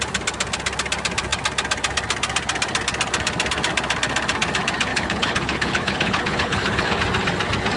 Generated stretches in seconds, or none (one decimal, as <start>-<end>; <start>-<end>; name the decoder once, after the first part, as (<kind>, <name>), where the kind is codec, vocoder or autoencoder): 4.9-7.0 (codec, HILCodec)